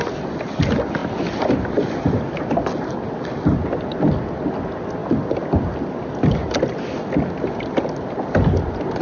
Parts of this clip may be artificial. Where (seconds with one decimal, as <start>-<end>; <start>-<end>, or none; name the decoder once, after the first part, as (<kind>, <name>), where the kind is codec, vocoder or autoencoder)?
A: 1.0-2.7 (vocoder, BigVGAN v2)